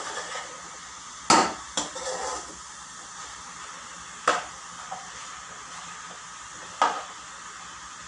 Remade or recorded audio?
recorded